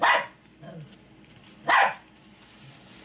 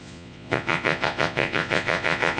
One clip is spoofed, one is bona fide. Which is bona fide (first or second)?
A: first